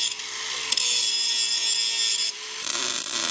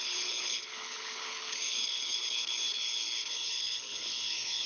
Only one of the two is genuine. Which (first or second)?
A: first